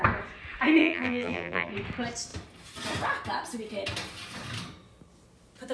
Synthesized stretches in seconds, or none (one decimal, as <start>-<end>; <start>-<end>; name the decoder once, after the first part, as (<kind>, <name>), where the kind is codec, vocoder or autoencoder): 0.8-1.7 (vocoder, BigVGAN v2)